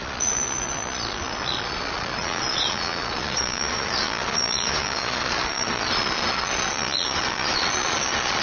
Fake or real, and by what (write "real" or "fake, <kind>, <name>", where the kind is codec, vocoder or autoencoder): fake, vocoder, Vocos